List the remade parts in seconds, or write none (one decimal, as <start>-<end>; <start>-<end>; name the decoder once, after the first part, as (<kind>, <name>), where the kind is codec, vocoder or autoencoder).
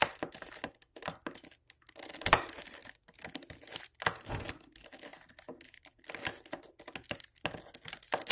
none